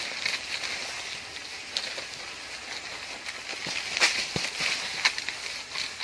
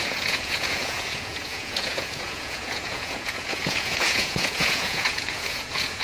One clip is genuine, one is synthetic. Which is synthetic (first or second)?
second